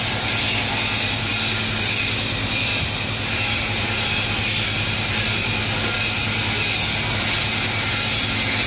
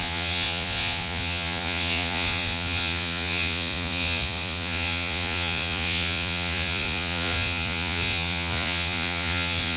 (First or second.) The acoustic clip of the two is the first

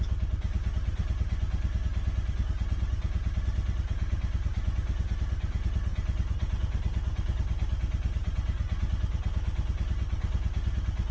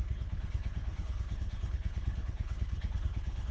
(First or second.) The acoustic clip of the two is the first